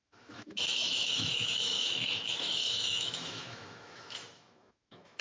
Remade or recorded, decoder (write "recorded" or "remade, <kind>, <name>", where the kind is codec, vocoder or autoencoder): remade, autoencoder, DAC-VAE